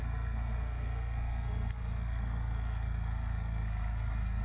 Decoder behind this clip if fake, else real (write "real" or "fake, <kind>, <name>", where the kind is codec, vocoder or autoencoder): fake, codec, SNAC